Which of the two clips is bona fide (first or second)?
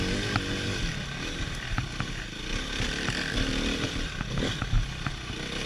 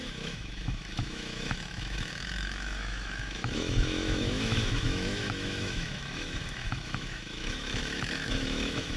first